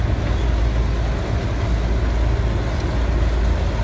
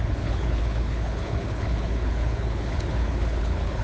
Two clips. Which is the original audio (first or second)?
first